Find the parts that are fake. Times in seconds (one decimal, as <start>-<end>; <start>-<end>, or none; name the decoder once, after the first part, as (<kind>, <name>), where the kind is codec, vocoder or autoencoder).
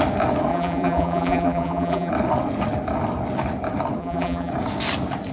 0.5-2.1 (vocoder, BigVGAN v2); 4.0-4.5